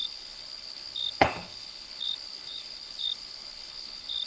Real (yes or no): no